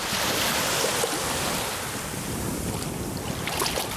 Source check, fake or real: real